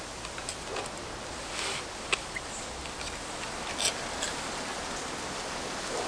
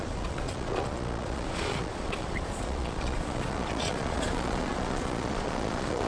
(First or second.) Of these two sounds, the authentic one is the first